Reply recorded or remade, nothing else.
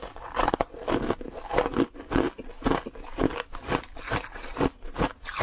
recorded